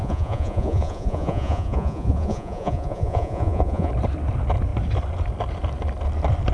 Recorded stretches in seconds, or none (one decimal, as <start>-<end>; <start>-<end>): 3.9-6.5